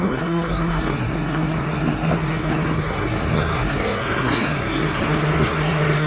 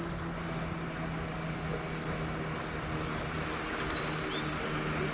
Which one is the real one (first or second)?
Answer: second